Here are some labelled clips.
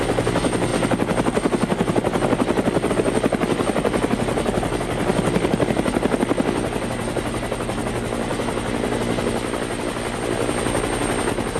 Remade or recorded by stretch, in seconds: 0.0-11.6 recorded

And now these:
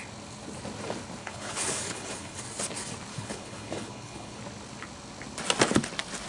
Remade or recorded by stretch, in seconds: 0.0-1.2 recorded; 1.2-2.4 remade; 2.4-3.1 recorded; 3.1-4.4 remade; 4.4-6.3 recorded

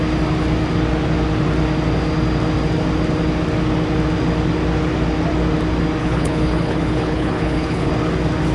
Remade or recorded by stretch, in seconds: 0.0-6.0 recorded; 6.0-7.9 remade; 7.9-8.5 recorded

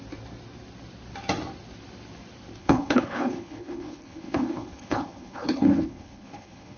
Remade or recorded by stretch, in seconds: 0.0-2.6 recorded; 2.6-6.8 remade

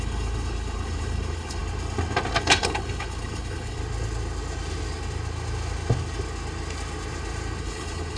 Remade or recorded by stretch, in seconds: 0.0-1.6 remade; 1.6-2.4 recorded; 2.4-3.8 remade; 3.8-7.6 recorded; 7.6-8.2 remade

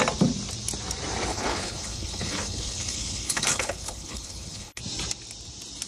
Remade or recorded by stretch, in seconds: 0.0-1.3 recorded; 1.3-4.8 remade; 4.8-5.9 recorded

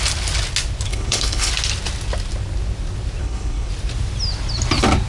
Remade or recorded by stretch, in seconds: 0.0-0.9 recorded; 0.9-1.5 remade; 1.5-3.2 recorded; 3.2-3.7 remade; 3.7-5.1 recorded

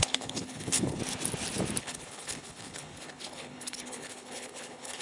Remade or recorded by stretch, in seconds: 0.0-1.0 remade; 1.0-1.8 recorded; 1.8-5.0 remade